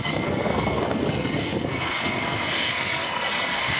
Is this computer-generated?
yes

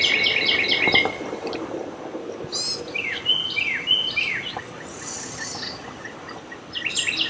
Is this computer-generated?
no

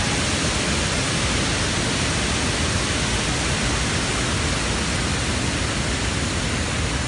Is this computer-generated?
no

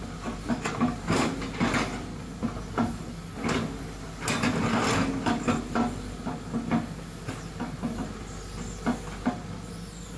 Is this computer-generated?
no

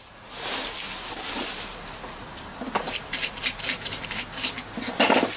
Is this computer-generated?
no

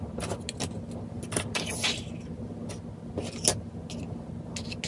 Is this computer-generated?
no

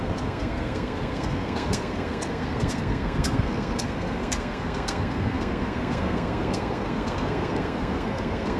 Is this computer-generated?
yes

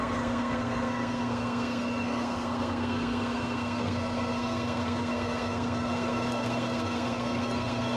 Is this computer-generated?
yes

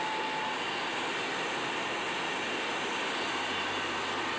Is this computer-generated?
no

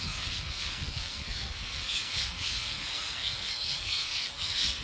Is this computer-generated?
yes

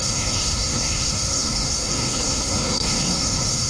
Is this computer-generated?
yes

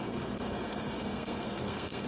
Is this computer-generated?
yes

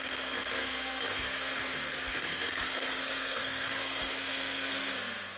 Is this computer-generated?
yes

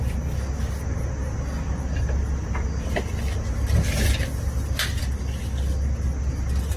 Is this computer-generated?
no